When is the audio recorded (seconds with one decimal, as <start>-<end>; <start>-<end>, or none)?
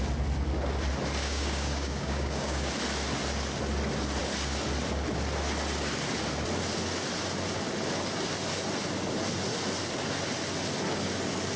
0.0-1.2; 2.7-11.6